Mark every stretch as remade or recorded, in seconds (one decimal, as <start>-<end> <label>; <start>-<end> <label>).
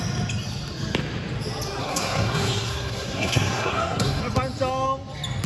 0.0-1.8 recorded; 1.8-4.2 remade; 4.2-5.5 recorded